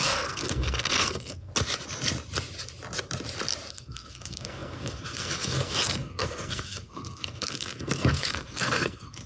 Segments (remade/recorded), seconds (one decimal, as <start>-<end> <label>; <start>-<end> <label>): 0.0-1.5 remade; 1.5-3.7 recorded; 3.7-9.3 remade